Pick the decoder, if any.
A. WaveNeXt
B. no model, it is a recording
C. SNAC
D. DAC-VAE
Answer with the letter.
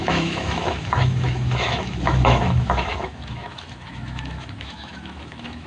D